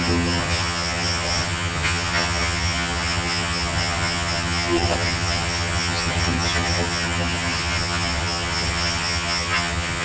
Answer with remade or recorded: remade